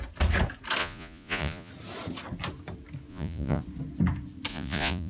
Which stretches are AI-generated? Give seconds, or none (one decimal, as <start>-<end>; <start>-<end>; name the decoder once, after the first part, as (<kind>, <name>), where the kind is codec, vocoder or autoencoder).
0.8-1.7 (vocoder, Vocos); 3.1-3.6; 4.5-5.1